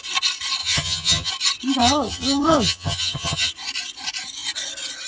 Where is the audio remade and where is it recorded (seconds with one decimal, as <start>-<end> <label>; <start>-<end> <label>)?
0.0-0.6 recorded; 0.6-1.3 remade; 1.3-1.8 recorded; 1.8-3.5 remade; 3.5-5.1 recorded